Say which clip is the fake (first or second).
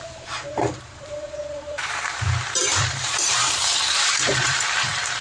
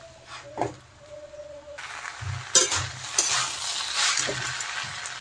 first